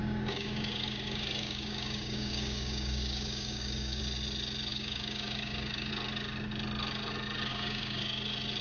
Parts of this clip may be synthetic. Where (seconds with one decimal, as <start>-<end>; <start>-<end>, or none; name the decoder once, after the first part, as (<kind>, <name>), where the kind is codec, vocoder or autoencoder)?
0.0-4.0 (codec, DAC); 4.7-5.9; 7.5-8.0